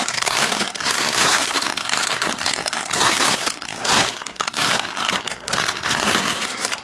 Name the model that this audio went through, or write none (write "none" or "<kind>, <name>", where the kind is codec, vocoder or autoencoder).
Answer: codec, SNAC